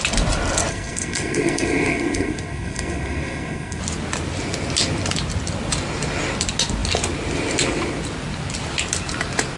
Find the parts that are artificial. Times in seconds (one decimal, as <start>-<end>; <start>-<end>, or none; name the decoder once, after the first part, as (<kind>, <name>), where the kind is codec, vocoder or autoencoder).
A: 0.7-3.8 (codec, SNAC)